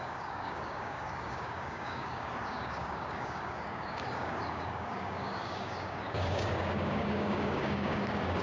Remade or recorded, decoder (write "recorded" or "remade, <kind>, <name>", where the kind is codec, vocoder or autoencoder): remade, codec, DAC